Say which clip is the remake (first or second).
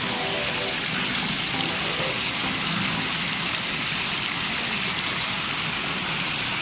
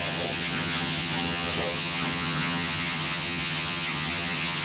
second